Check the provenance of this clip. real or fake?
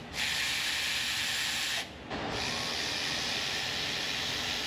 real